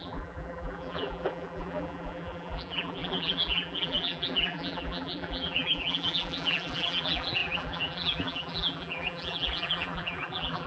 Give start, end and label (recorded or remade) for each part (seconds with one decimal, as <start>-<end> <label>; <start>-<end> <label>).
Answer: 0.0-10.7 remade